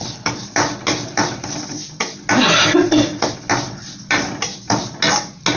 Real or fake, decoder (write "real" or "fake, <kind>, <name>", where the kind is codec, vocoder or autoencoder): real